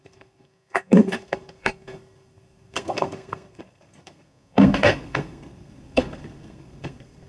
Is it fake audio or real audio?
fake